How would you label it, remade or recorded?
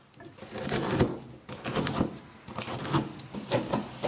recorded